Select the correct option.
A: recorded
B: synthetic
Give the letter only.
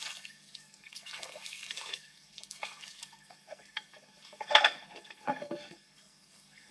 B